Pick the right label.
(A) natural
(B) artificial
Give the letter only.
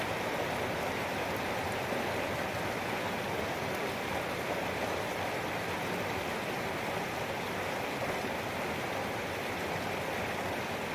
A